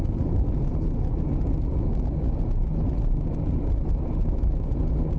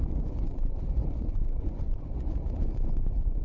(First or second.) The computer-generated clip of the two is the second